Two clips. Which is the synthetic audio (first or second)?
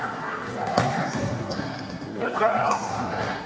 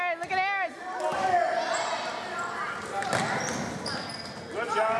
first